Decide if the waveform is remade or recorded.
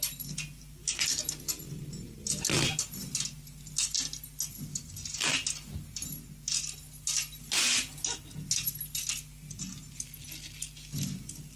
recorded